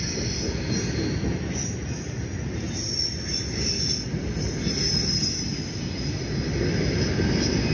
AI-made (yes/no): no